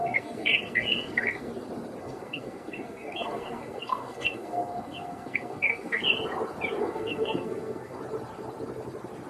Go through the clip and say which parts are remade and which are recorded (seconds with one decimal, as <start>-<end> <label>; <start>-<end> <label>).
0.0-1.5 remade; 1.5-2.0 recorded; 2.0-6.0 remade; 6.0-6.8 recorded; 6.8-8.0 remade; 8.0-9.3 recorded